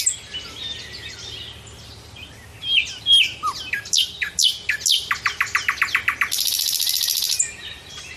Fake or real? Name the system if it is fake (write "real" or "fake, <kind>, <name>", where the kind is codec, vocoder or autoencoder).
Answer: real